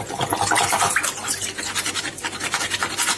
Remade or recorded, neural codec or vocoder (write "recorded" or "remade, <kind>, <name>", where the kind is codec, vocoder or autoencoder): recorded